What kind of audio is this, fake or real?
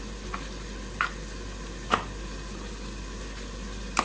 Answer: real